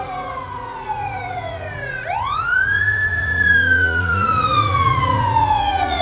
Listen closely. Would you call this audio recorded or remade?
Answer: remade